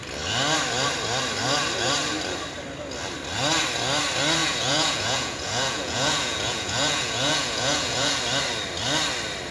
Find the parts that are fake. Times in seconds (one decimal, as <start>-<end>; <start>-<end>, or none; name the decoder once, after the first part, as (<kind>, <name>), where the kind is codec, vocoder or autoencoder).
4.4-8.2 (vocoder, Vocos)